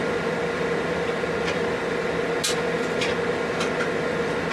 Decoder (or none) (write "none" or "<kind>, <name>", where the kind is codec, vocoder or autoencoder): none